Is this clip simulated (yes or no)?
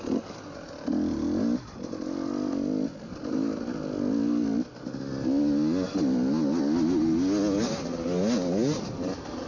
no